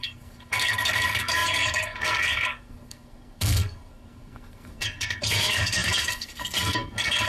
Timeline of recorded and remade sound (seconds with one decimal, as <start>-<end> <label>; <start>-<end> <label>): 0.0-7.3 remade